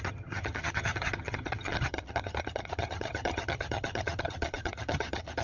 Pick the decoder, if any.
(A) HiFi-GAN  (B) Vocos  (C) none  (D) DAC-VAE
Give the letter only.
A